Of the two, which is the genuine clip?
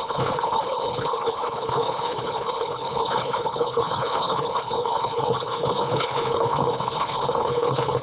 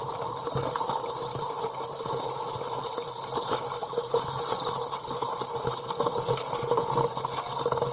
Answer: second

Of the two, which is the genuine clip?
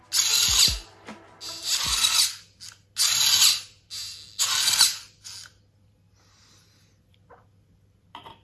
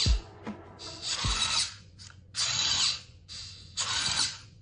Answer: first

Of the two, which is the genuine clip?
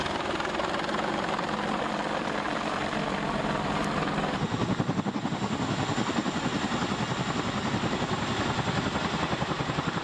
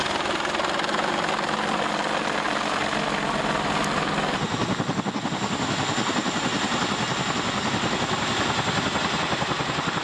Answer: second